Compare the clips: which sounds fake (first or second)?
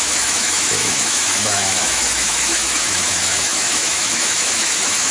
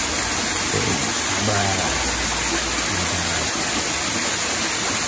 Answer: first